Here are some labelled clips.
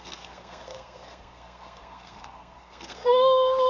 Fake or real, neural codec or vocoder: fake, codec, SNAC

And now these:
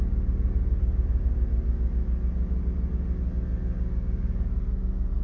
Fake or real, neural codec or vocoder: real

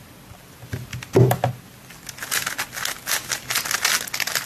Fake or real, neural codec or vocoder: real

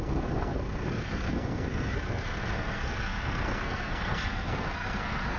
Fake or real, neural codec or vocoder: fake, codec, SNAC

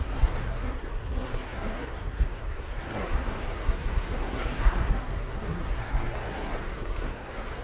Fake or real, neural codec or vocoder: fake, codec, SNAC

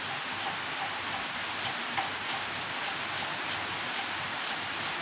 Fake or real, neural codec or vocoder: real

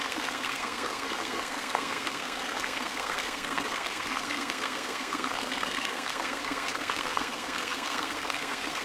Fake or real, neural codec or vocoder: fake, codec, SNAC